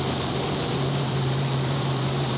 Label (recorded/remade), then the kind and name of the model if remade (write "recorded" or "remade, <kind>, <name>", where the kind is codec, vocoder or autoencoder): remade, vocoder, BigVGAN v2